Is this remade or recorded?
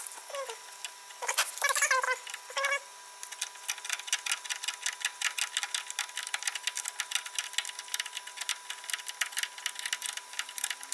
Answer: recorded